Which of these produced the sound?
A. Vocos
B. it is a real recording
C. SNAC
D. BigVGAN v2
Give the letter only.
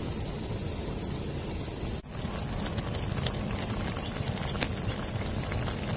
B